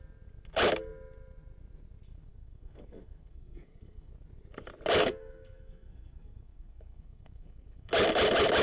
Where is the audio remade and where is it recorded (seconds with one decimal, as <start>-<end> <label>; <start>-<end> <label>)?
0.0-2.3 recorded; 2.3-4.1 remade; 4.1-5.0 recorded; 5.0-7.9 remade; 7.9-8.6 recorded